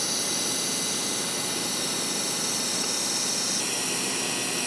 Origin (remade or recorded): recorded